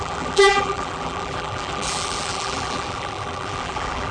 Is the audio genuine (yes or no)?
no